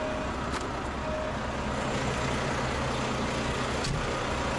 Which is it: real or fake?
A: real